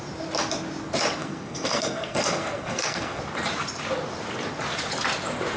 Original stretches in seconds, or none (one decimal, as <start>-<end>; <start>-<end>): 0.0-1.2; 3.2-5.6